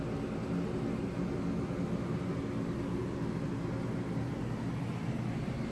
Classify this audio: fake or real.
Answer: real